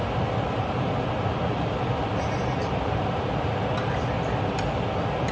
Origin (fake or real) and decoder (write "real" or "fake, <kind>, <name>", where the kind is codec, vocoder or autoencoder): real